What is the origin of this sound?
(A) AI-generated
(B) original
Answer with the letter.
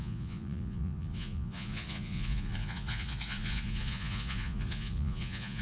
A